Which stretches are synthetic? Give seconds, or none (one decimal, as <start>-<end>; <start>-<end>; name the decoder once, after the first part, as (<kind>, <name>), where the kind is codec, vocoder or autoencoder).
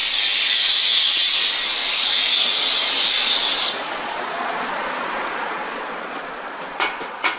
3.5-7.4 (vocoder, Vocos)